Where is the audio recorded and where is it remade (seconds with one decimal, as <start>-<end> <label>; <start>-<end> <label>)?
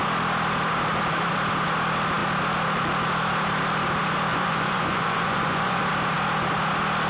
0.0-4.3 recorded; 4.3-5.8 remade; 5.8-7.1 recorded